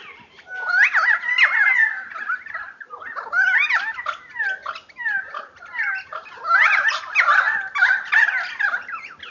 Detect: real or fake real